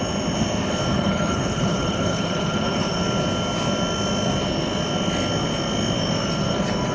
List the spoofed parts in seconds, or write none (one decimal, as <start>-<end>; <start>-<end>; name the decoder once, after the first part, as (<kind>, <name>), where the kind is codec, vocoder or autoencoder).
0.9-3.0 (codec, HILCodec)